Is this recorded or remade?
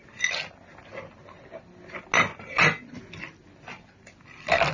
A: recorded